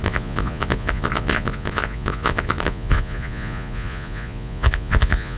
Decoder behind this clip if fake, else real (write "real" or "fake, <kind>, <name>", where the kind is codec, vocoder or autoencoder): fake, vocoder, Vocos